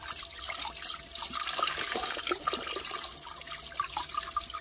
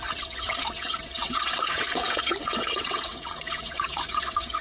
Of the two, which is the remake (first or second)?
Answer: second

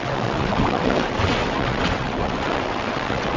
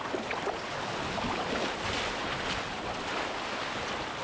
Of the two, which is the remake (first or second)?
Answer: first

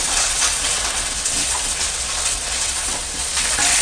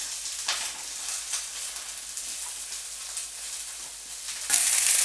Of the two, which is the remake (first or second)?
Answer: first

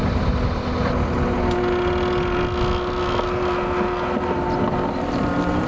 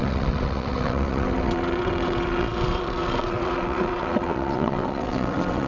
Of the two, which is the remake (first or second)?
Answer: second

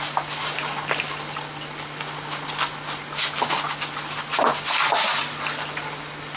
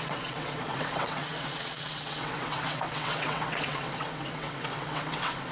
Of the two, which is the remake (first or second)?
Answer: second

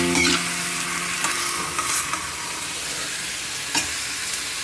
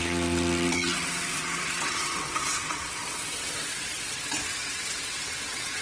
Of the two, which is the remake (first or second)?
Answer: second